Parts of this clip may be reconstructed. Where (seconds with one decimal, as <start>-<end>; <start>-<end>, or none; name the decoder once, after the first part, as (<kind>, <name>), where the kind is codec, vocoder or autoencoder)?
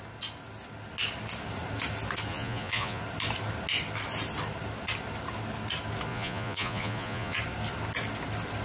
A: 2.3-3.0 (vocoder, Vocos); 6.1-7.4